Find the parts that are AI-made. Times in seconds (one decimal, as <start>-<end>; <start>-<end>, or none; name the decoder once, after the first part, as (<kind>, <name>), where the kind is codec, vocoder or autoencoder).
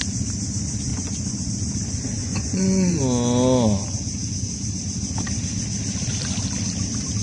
0.9-1.5 (vocoder, Vocos); 2.2-3.0